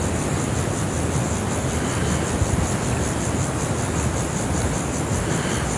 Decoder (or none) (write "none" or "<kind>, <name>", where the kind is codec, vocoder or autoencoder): none